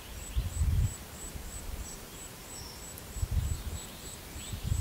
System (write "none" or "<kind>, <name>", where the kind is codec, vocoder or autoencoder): vocoder, BigVGAN v2